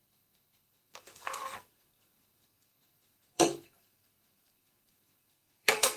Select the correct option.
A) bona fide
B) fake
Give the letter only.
B